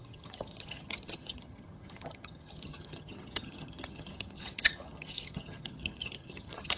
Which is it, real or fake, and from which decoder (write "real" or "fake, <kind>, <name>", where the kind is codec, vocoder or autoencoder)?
fake, vocoder, HiFi-GAN